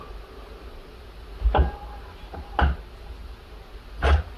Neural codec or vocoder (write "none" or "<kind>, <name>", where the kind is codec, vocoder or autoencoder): none